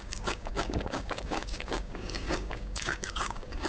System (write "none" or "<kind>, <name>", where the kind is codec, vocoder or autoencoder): codec, DAC